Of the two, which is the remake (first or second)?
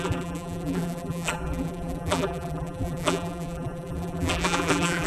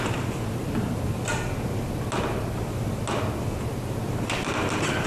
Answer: first